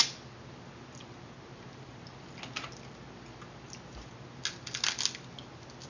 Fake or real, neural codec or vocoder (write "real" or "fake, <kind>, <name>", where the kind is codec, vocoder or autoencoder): real